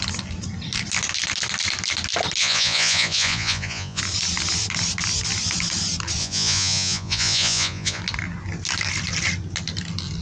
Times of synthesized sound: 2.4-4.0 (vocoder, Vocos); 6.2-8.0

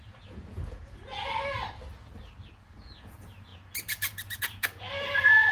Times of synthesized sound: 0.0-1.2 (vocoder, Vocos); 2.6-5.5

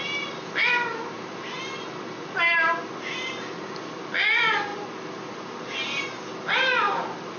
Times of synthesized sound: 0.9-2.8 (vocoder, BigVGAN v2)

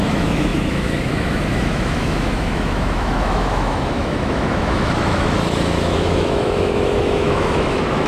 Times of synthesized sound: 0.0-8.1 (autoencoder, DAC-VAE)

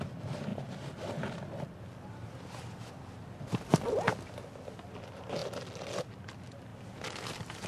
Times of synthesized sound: none

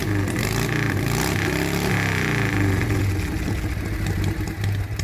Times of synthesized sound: none